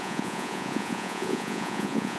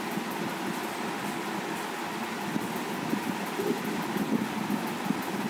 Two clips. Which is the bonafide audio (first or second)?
second